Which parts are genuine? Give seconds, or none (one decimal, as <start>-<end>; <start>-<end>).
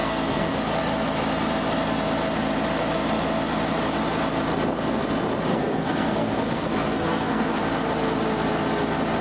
0.6-5.5; 7.6-9.2